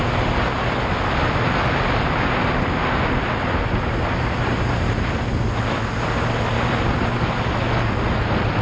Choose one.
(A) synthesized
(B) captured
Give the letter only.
B